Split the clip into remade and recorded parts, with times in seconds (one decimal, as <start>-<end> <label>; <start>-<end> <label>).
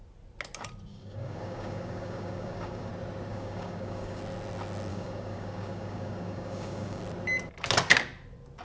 0.0-0.9 recorded; 0.9-2.9 remade; 2.9-3.3 recorded; 3.3-4.2 remade; 4.2-4.9 recorded; 4.9-7.0 remade; 7.0-8.6 recorded